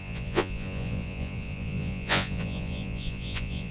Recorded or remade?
remade